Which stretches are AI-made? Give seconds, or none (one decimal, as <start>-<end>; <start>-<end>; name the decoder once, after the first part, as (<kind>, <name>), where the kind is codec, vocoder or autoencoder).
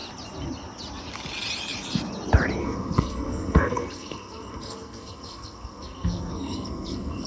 2.6-7.3 (codec, SNAC)